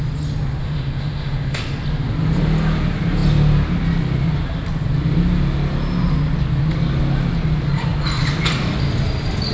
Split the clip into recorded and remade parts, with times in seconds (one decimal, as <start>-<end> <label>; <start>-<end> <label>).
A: 0.0-0.6 recorded; 0.6-1.6 remade; 1.6-9.5 recorded